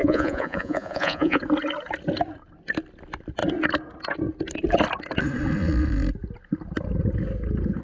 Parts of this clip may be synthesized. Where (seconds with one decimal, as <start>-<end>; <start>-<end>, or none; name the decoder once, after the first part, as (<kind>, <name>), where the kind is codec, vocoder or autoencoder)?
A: 0.0-1.4 (vocoder, Vocos)